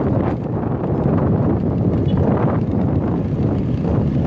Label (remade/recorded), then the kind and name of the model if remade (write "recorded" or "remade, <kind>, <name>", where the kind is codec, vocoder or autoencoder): recorded